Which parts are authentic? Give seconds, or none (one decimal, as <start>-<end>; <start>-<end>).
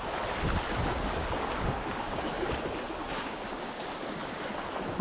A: 0.0-1.2; 2.6-3.0; 4.4-5.0